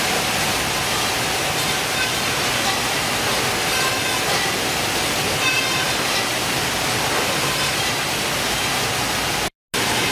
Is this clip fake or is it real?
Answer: real